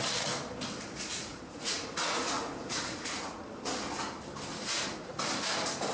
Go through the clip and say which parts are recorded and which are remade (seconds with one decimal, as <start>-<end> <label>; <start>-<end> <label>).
0.0-1.1 recorded; 1.1-3.4 remade; 3.4-4.5 recorded; 4.5-5.2 remade; 5.2-5.9 recorded